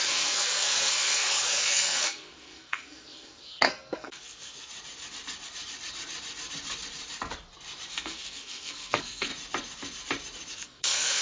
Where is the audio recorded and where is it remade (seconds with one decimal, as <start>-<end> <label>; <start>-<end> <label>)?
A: 0.0-4.7 remade; 4.7-7.9 recorded; 7.9-9.3 remade; 9.3-10.5 recorded; 10.5-11.2 remade